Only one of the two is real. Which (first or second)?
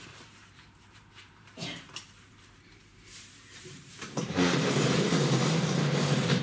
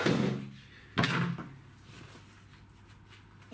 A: second